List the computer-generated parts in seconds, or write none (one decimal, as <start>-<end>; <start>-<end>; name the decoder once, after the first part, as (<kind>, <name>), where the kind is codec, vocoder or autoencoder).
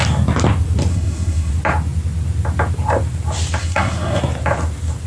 0.9-1.5 (codec, SNAC); 3.6-4.2